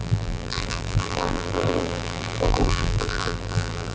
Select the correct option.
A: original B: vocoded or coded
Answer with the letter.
B